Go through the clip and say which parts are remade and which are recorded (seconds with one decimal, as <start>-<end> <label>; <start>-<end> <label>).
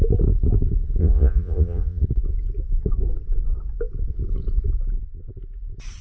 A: 0.0-1.0 recorded; 1.0-2.0 remade; 2.0-6.0 recorded